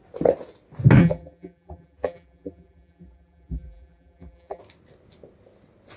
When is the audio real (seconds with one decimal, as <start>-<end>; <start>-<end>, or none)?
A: 0.0-1.0; 4.6-6.0